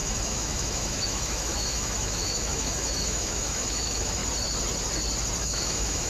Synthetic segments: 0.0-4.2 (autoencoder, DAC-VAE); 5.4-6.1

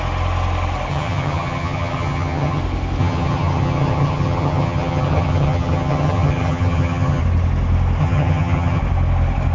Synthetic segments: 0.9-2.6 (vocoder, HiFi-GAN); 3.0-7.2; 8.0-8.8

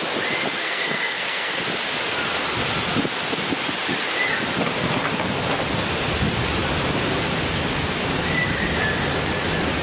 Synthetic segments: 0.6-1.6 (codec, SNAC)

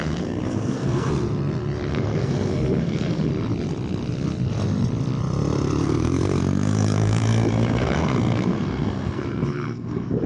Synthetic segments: 0.0-1.1 (codec, SNAC); 1.9-3.3; 5.8-10.3